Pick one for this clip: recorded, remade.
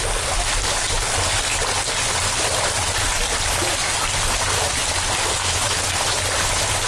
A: recorded